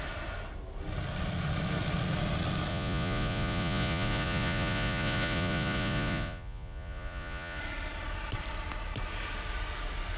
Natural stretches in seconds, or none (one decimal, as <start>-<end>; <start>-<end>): 0.0-2.7; 7.6-10.2